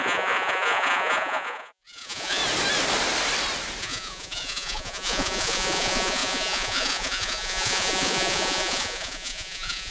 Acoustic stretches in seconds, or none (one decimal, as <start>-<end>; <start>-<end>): 2.4-3.8